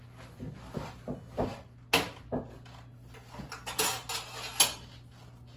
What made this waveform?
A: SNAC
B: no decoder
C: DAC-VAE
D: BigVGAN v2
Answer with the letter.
B